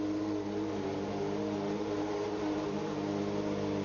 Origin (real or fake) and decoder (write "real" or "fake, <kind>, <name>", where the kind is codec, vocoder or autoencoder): real